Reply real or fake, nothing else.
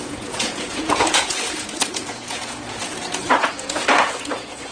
fake